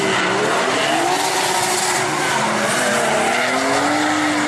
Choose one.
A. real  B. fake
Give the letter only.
A